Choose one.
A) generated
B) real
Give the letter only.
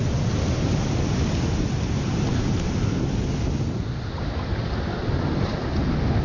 B